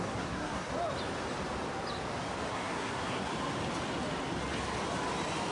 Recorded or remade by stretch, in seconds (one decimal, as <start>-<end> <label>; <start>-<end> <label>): 0.0-0.7 remade; 0.7-2.5 recorded; 2.5-3.3 remade; 3.3-5.5 recorded